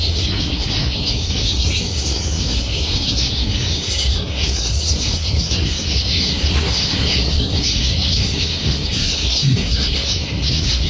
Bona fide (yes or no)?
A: no